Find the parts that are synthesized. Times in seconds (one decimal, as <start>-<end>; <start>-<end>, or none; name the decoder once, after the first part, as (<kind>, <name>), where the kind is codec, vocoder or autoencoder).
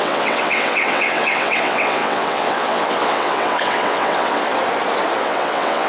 0.0-4.4 (vocoder, WaveNeXt); 5.2-5.9